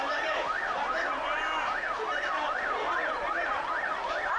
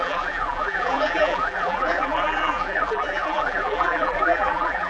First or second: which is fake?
second